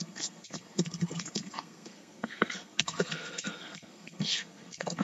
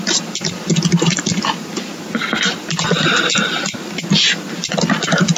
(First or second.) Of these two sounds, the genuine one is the second